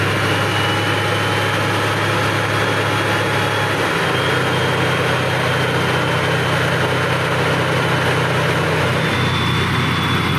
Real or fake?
real